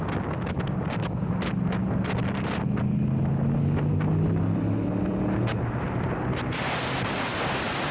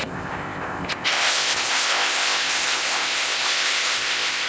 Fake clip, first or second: second